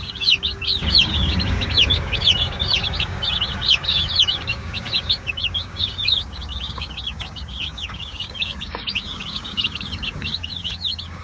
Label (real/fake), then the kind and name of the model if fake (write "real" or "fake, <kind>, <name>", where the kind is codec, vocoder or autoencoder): fake, codec, DAC